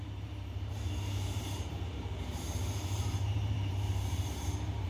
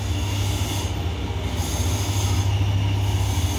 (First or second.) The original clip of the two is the second